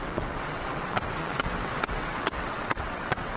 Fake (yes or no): yes